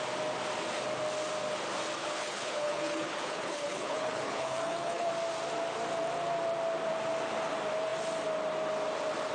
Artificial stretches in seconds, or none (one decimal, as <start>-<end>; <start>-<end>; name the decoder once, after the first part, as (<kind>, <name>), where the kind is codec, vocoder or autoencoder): 2.0-5.1 (codec, HILCodec)